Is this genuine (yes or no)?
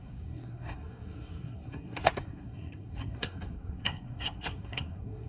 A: no